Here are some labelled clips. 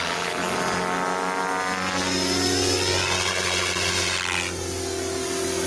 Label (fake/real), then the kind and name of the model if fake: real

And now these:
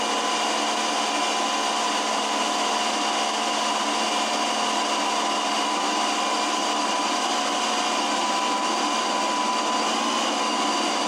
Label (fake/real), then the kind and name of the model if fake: real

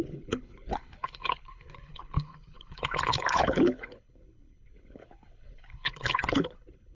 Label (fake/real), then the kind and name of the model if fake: fake, codec, HILCodec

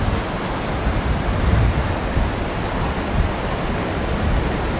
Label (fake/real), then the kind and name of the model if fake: real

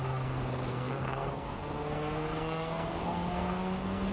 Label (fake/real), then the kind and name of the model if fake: fake, codec, SNAC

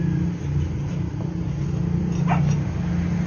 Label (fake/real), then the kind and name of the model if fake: real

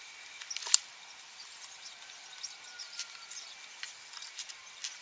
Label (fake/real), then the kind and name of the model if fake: real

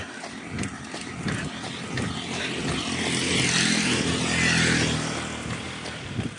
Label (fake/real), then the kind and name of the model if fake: real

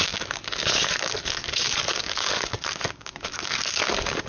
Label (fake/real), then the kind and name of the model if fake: fake, codec, DAC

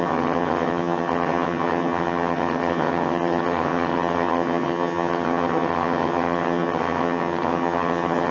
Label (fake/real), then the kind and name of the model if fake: fake, vocoder, HiFi-GAN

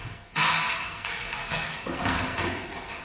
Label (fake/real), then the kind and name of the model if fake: fake, codec, SNAC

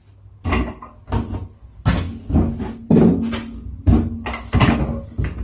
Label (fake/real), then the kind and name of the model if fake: real